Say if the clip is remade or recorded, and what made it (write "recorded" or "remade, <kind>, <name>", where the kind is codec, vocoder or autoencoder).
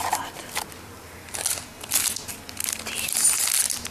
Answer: recorded